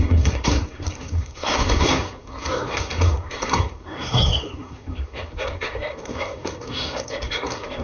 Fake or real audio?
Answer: fake